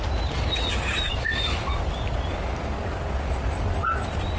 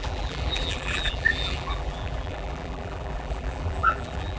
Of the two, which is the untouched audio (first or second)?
first